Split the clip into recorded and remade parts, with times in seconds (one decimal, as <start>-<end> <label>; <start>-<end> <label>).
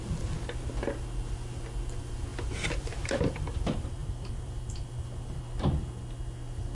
0.0-2.3 recorded; 2.3-3.3 remade; 3.3-4.0 recorded; 4.0-5.4 remade; 5.4-6.7 recorded